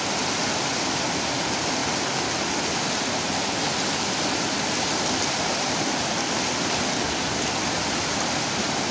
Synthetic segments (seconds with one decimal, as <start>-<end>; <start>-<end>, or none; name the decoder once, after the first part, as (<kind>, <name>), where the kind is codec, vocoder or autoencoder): none